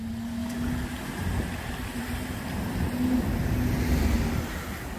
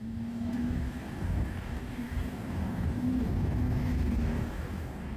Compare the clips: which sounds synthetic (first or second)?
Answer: second